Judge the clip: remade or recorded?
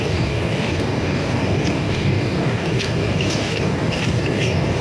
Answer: remade